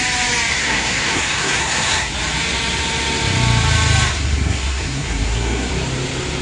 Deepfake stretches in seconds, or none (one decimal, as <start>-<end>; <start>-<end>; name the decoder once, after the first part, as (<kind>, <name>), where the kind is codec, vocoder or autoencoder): 0.5-2.1 (codec, SNAC); 4.1-5.7